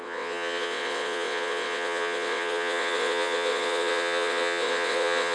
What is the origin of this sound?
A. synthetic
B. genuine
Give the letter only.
A